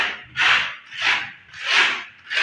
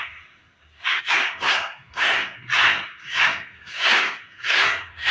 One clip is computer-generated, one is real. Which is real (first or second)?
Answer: first